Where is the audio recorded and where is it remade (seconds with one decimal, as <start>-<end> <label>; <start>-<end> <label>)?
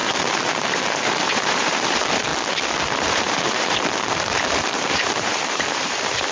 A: 0.0-2.3 remade; 2.3-2.8 recorded; 2.8-6.3 remade